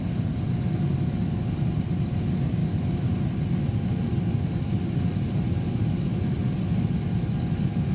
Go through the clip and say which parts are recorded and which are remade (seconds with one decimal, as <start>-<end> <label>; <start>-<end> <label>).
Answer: 0.0-2.6 recorded; 2.6-3.4 remade; 3.4-7.9 recorded

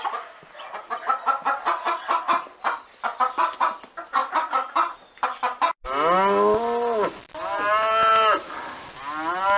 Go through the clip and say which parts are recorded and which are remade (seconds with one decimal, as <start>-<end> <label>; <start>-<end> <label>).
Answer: 0.0-9.6 recorded

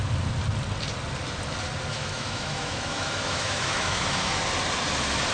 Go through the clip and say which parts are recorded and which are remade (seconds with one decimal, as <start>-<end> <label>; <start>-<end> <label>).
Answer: 0.0-1.9 recorded; 1.9-4.4 remade; 4.4-5.3 recorded

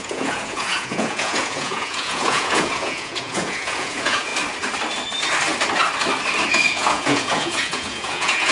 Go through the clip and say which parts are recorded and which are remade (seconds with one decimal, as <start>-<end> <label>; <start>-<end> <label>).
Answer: 0.0-4.3 remade; 4.3-6.5 recorded; 6.5-8.5 remade

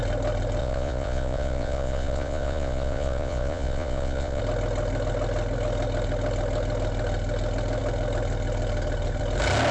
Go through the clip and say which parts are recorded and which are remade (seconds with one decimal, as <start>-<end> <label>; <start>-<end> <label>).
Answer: 0.0-0.6 recorded; 0.6-4.4 remade; 4.4-9.7 recorded

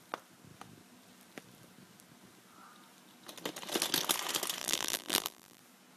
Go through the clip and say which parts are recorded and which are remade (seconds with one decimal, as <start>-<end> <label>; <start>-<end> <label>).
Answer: 0.0-4.6 recorded; 4.6-5.6 remade; 5.6-6.0 recorded

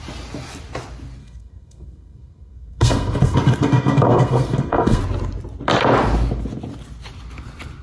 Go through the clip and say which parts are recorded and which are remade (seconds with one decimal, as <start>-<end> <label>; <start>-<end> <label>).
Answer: 0.0-1.2 recorded; 1.2-5.0 remade; 5.0-7.8 recorded

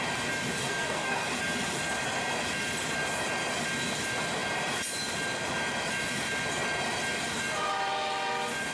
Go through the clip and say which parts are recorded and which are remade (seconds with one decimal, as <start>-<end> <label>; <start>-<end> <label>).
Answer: 0.0-0.6 recorded; 0.6-1.4 remade; 1.4-8.7 recorded